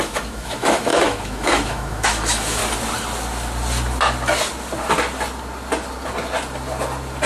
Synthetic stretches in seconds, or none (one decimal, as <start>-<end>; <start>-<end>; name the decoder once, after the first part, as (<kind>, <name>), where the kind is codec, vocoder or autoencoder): 0.0-2.6 (autoencoder, DAC-VAE)